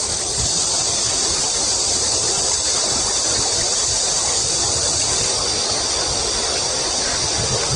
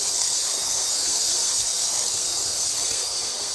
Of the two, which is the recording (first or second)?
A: first